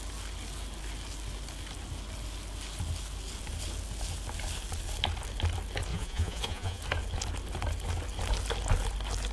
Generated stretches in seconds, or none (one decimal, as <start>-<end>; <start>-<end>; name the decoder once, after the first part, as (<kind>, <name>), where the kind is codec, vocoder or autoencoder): 5.9-6.8 (vocoder, Vocos)